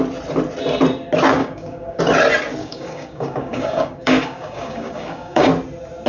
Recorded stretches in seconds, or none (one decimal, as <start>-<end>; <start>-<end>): 0.0-1.4; 2.0-2.6; 5.5-6.1